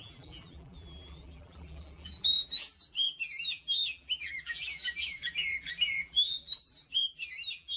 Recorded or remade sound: remade